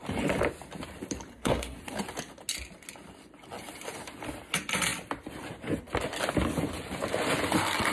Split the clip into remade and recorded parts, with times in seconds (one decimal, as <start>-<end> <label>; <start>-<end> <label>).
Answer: 0.0-1.3 recorded; 1.3-1.8 remade; 1.8-7.9 recorded